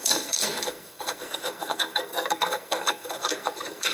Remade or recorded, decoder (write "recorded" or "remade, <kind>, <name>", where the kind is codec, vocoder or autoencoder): remade, codec, SNAC